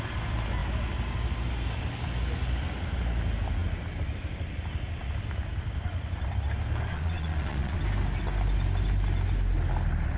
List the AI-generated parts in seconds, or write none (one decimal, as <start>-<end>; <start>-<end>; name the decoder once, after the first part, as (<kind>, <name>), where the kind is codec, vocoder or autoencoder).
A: 6.9-7.8 (vocoder, Vocos)